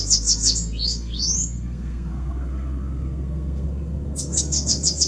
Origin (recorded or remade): remade